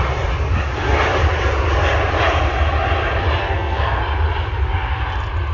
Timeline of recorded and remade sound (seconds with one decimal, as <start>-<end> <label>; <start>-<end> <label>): 0.0-3.4 recorded; 3.4-4.0 remade; 4.0-5.5 recorded